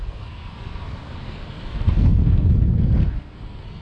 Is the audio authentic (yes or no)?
no